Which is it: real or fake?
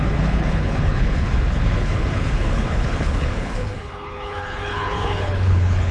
fake